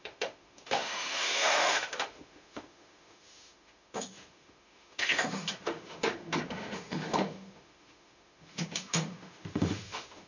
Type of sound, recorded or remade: remade